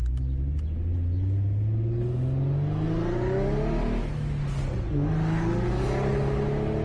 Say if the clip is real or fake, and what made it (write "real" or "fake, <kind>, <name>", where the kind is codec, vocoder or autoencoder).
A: real